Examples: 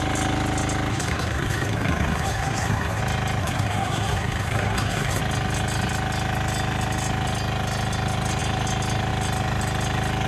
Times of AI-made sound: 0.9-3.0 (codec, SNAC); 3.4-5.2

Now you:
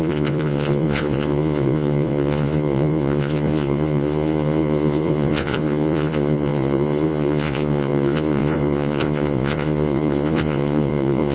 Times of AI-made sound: 0.0-11.3 (vocoder, Vocos)

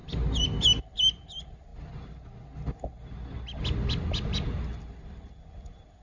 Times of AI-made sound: 0.0-1.7 (vocoder, BigVGAN v2); 4.8-6.0

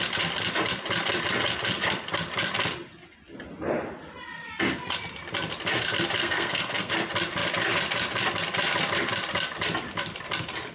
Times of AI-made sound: 6.2-6.9 (codec, SNAC)

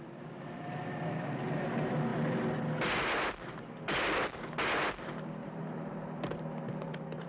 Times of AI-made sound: 5.4-7.3 (vocoder, BigVGAN v2)

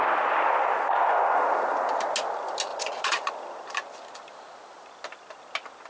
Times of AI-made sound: 2.7-3.3 (vocoder, Vocos)